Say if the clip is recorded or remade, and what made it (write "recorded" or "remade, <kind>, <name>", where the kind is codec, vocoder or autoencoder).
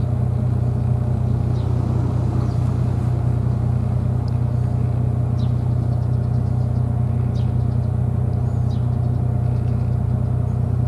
recorded